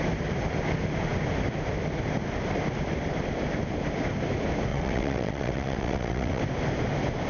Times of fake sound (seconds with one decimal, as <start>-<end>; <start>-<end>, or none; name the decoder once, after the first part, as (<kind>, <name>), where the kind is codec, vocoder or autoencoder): 4.7-6.4 (vocoder, WaveNeXt)